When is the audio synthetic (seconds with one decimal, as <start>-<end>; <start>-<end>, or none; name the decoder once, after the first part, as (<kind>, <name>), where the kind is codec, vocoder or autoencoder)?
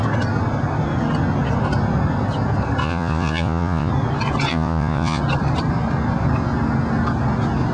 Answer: 2.8-3.9 (vocoder, Vocos); 4.5-5.2